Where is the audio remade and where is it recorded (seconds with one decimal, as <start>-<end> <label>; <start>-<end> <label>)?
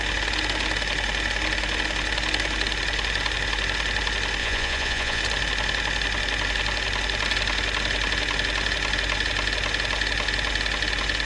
0.0-4.4 recorded; 4.4-5.2 remade; 5.2-11.3 recorded